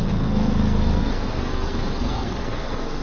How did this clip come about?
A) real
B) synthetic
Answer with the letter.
B